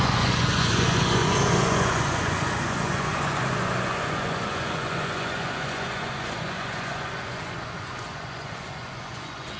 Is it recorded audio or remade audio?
remade